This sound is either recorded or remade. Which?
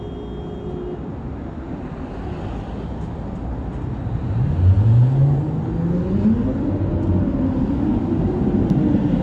recorded